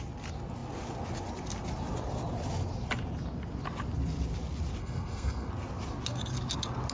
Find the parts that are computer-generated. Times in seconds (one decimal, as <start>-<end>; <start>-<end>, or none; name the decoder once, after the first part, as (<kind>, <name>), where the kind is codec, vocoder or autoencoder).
4.8-5.5 (codec, SNAC)